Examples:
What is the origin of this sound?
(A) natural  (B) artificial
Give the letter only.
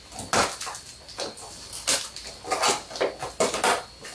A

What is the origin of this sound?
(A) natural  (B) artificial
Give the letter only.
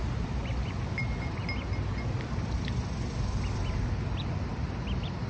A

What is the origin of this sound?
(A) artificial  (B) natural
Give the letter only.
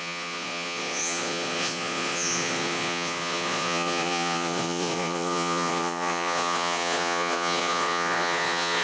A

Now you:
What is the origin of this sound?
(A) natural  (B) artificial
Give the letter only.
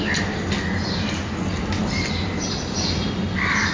A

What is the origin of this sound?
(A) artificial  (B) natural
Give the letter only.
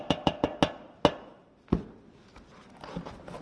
B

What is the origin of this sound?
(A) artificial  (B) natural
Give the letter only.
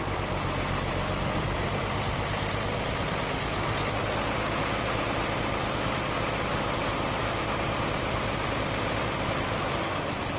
B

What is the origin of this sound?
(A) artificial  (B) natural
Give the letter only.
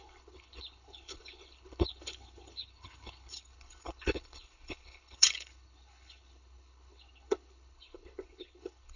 A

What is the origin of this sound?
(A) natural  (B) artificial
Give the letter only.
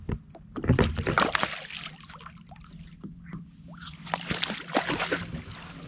A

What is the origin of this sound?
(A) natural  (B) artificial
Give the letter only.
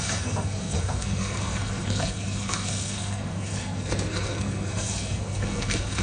B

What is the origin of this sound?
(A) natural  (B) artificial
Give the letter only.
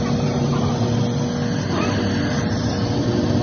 A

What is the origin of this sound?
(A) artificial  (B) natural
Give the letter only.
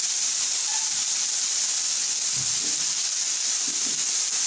B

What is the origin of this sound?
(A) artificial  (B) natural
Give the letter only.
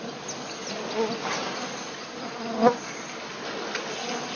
B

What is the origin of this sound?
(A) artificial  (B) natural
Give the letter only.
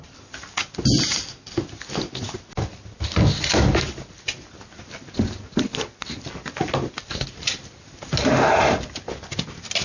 B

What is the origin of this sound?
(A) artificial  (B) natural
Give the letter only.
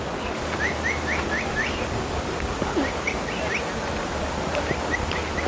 B